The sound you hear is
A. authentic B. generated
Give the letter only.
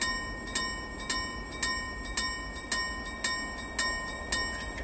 A